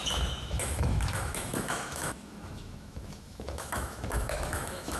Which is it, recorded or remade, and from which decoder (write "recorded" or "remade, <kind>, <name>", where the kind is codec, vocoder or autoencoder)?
remade, autoencoder, DAC-VAE